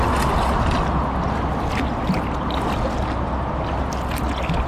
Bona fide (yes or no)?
yes